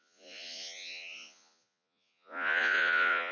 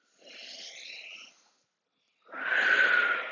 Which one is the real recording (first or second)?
second